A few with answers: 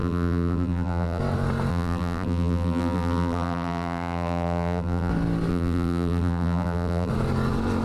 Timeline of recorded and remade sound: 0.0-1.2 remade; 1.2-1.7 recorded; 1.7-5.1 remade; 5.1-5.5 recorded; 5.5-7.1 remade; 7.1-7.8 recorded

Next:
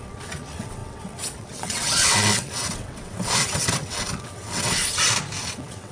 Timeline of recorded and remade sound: 0.0-4.8 remade; 4.8-5.4 recorded; 5.4-5.9 remade

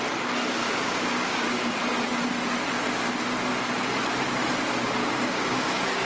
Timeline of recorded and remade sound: 0.0-0.6 recorded; 0.6-1.7 remade; 1.7-5.0 recorded; 5.0-5.6 remade; 5.6-6.0 recorded